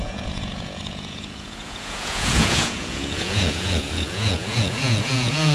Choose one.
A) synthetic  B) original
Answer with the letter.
A